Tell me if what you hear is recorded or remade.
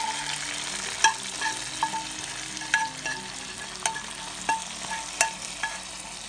recorded